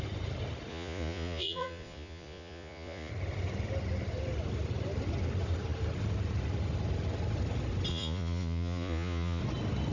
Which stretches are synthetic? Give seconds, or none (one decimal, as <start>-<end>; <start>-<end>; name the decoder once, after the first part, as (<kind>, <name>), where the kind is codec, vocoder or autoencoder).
0.7-3.1 (vocoder, Vocos); 7.9-9.4